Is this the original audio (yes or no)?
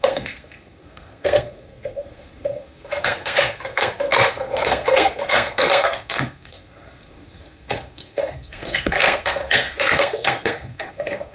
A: no